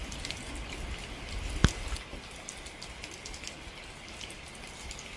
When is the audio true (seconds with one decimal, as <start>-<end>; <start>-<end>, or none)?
0.0-5.2